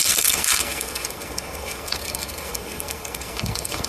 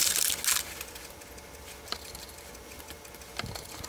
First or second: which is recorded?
second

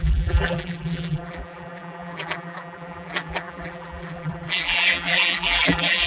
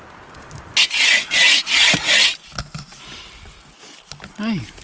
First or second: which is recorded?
second